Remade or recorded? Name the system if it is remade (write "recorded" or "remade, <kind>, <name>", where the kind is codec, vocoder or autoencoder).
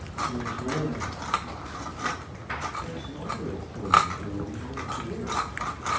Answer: recorded